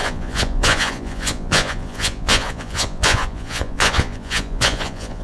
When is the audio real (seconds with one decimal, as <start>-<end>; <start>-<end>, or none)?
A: none

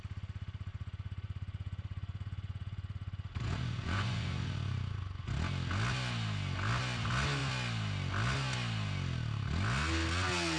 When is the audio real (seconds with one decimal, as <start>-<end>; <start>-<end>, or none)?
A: 0.0-0.7; 5.3-10.6